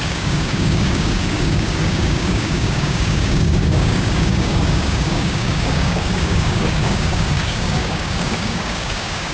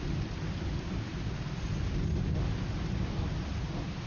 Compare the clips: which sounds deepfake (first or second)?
first